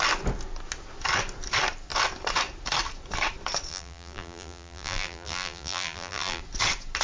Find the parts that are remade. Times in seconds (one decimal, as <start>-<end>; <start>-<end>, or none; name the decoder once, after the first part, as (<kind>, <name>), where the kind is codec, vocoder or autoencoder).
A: 3.7-6.4 (vocoder, BigVGAN v2)